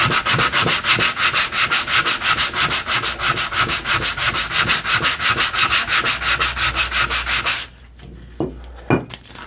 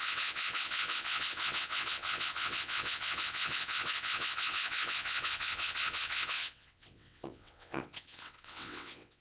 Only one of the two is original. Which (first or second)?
first